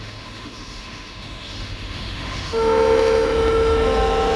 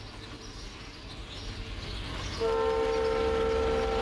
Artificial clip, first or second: first